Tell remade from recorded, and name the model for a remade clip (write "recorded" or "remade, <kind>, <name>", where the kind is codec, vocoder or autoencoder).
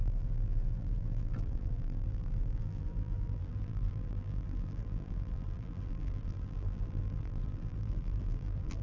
remade, vocoder, BigVGAN v2